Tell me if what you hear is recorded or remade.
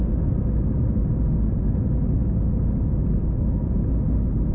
recorded